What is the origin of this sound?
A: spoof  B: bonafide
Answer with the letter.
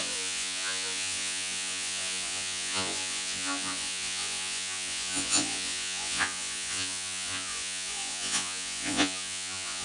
A